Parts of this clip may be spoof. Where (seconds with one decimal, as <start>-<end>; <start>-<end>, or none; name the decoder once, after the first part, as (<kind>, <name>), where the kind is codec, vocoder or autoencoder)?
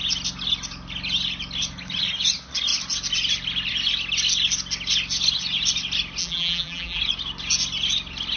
6.2-7.0 (vocoder, BigVGAN v2)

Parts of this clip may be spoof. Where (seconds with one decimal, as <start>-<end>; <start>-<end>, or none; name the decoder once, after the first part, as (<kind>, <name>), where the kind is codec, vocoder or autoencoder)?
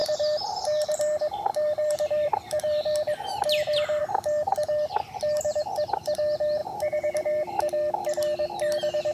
0.0-4.0 (vocoder, BigVGAN v2); 6.6-7.6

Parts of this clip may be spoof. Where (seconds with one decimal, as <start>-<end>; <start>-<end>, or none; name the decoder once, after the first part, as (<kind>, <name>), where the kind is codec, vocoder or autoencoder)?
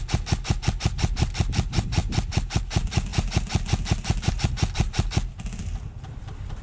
none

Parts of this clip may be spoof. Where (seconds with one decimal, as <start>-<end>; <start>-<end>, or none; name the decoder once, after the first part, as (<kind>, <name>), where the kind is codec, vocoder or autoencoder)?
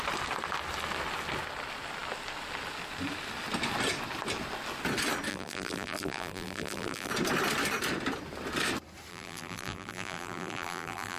5.3-7.1 (vocoder, BigVGAN v2); 9.1-11.2